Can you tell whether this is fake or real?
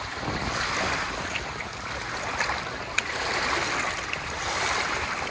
real